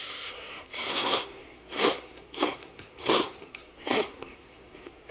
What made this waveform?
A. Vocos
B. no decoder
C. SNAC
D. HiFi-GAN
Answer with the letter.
C